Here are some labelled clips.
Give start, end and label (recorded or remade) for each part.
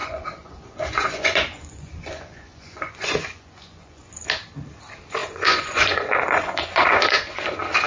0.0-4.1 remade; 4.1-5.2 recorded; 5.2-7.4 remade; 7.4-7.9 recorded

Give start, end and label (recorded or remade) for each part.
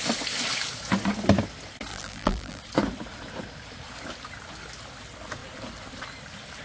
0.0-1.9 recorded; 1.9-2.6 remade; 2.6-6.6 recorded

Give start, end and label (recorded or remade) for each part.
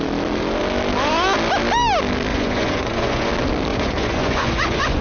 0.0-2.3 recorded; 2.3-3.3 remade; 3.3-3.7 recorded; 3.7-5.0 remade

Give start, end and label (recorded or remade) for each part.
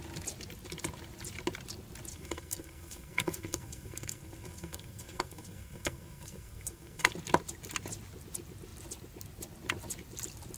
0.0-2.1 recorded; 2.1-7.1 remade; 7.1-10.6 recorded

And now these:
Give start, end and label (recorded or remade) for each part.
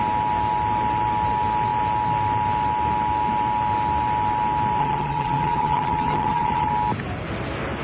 0.0-4.8 recorded; 4.8-6.7 remade; 6.7-7.8 recorded